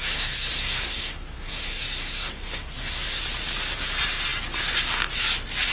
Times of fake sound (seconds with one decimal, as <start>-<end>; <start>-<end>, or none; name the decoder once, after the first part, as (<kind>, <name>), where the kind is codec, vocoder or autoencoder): 0.0-3.2 (codec, SNAC)